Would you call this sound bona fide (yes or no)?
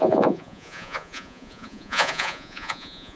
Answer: no